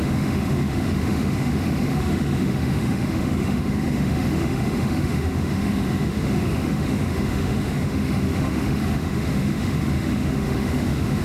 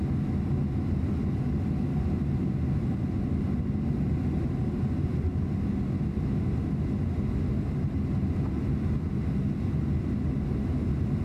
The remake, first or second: first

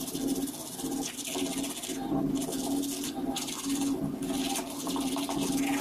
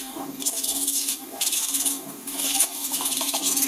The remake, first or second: second